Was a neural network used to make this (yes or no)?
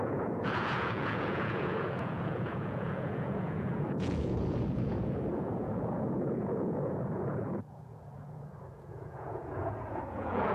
yes